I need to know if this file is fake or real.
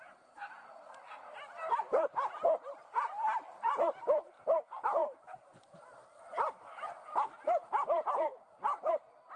real